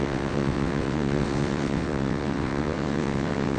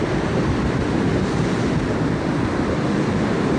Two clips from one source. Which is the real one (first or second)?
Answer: second